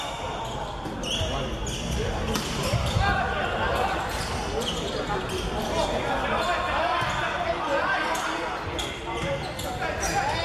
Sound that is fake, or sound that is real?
real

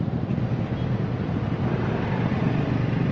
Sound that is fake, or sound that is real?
real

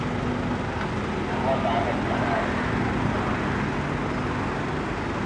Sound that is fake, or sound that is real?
real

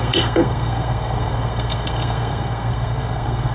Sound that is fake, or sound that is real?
fake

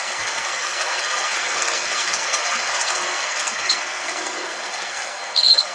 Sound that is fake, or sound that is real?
fake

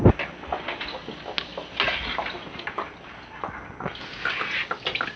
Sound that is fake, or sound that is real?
real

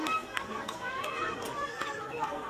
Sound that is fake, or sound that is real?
fake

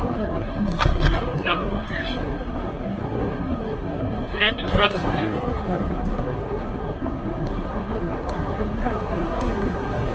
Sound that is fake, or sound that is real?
fake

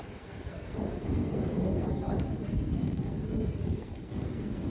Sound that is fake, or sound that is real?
fake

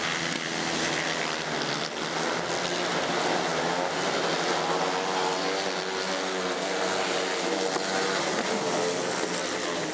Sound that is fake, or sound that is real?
real